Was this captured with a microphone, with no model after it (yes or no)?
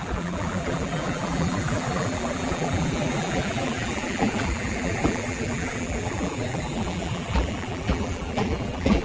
no